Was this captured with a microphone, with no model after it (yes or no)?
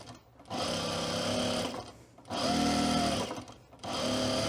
yes